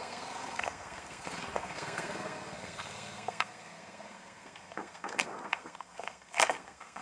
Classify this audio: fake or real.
fake